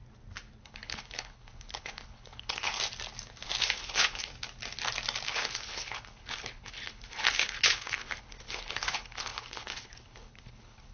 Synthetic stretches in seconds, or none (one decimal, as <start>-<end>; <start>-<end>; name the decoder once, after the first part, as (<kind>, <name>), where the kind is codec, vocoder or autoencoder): 0.6-2.7 (codec, HILCodec); 3.6-4.3; 5.3-10.9